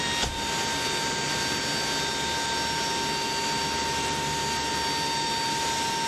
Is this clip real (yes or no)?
yes